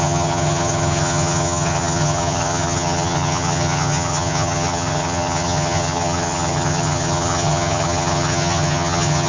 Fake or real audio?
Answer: fake